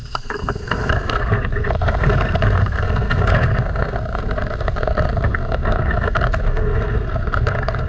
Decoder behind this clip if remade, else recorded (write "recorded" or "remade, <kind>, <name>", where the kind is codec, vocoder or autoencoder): remade, codec, SNAC